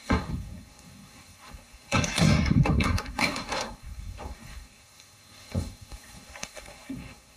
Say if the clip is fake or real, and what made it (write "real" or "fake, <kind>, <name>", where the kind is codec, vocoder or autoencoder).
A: fake, codec, SNAC